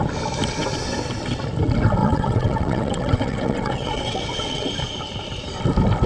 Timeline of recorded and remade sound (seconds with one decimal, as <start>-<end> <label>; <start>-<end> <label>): 0.0-2.0 recorded; 2.0-4.7 remade; 4.7-6.1 recorded